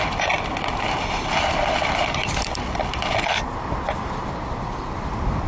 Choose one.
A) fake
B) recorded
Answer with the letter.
A